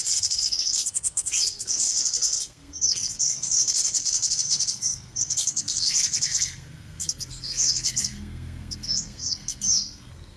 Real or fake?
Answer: fake